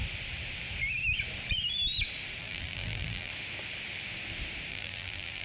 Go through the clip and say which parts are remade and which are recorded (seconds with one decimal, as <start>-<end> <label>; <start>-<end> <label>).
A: 0.0-2.4 recorded; 2.4-3.3 remade; 3.3-4.7 recorded; 4.7-5.4 remade